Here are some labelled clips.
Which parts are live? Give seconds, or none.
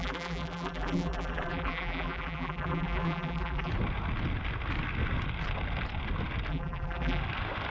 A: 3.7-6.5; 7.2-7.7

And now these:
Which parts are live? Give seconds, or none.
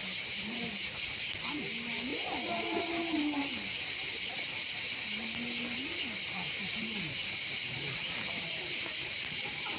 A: none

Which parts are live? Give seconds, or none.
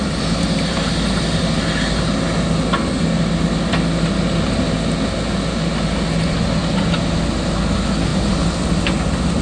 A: 1.4-8.1; 8.8-9.4